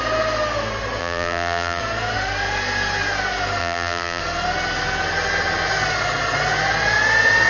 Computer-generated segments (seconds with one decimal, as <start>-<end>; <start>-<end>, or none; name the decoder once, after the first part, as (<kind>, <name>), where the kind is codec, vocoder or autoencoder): 1.0-1.8 (vocoder, BigVGAN v2); 3.6-4.2